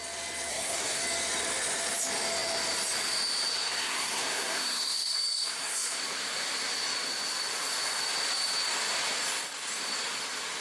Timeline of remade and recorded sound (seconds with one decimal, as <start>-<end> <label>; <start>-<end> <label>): 0.0-0.5 recorded; 0.5-1.0 remade; 1.0-3.5 recorded; 3.5-6.0 remade; 6.0-10.6 recorded